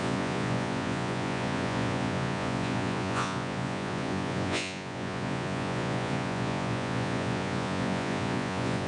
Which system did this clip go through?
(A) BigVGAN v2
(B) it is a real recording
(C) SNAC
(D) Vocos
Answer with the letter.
D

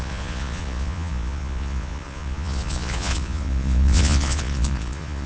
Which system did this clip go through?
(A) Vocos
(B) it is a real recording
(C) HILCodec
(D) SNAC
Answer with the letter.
A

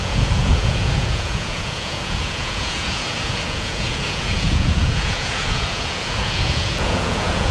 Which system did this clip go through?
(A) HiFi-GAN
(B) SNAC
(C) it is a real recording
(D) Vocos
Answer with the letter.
D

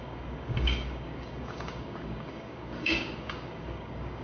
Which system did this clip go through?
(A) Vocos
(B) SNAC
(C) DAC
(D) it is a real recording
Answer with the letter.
C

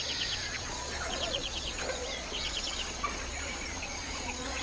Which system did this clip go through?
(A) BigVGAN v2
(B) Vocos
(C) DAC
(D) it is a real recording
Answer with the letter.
B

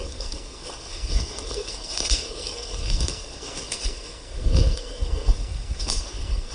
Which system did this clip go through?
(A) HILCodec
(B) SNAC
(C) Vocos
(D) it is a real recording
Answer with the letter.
B